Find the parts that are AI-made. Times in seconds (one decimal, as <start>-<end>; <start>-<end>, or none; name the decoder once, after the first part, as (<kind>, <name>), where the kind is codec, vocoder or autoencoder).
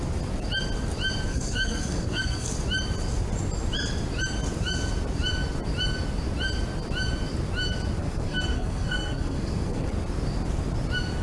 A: 1.3-2.5 (codec, SNAC); 8.0-9.9